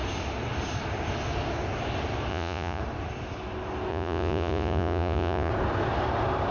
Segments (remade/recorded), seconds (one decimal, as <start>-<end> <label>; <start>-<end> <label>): 0.0-2.3 recorded; 2.3-2.8 remade; 2.8-3.9 recorded; 3.9-5.5 remade; 5.5-6.5 recorded